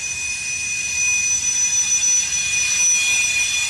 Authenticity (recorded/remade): recorded